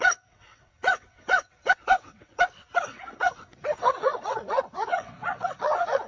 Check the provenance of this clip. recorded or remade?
remade